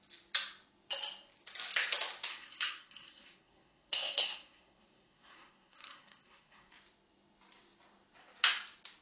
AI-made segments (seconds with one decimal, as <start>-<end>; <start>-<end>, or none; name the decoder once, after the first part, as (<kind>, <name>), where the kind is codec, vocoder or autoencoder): 2.3-6.7 (codec, SNAC)